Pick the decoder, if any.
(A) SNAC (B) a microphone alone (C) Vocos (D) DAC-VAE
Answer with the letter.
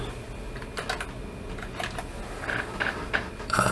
B